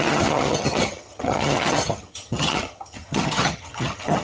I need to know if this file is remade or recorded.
remade